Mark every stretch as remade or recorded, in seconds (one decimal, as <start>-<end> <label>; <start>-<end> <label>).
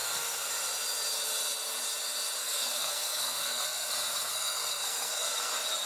0.0-0.5 remade; 0.5-2.4 recorded; 2.4-3.9 remade; 3.9-4.3 recorded; 4.3-5.5 remade; 5.5-5.9 recorded